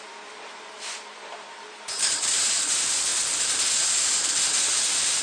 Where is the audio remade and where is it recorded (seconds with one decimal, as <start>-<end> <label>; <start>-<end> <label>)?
0.0-3.1 remade; 3.1-4.4 recorded; 4.4-5.2 remade